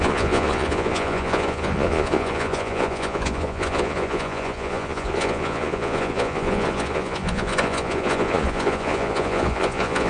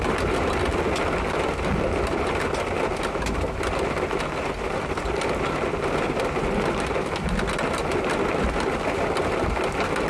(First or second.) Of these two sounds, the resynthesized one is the first